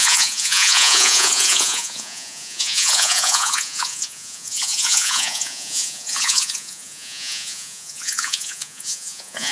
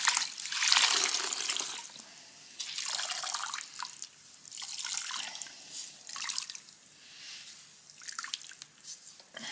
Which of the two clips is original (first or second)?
second